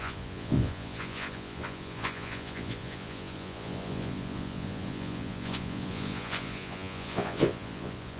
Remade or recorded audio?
remade